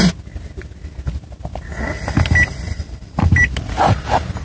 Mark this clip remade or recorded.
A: recorded